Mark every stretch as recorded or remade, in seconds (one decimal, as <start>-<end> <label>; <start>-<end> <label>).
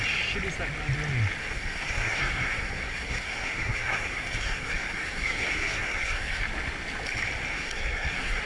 0.0-1.4 recorded; 1.4-6.4 remade; 6.4-7.5 recorded; 7.5-8.4 remade